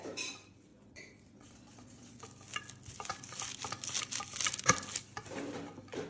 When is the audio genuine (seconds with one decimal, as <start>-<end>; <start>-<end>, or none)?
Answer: 0.0-0.7; 2.2-6.1